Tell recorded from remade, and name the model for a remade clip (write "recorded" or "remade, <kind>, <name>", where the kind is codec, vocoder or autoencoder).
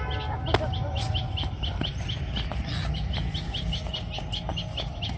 recorded